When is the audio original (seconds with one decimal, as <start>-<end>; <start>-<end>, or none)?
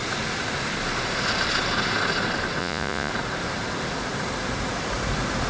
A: 0.0-2.6; 3.1-5.5